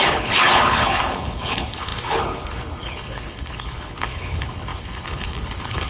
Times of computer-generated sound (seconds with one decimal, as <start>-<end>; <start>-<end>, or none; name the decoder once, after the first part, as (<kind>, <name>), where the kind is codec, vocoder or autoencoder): 0.0-5.9 (codec, HILCodec)